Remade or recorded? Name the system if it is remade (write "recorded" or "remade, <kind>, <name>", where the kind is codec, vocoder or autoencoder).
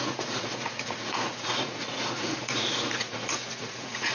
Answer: remade, vocoder, Vocos